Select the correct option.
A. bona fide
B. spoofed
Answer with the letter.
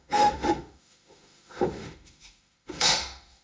B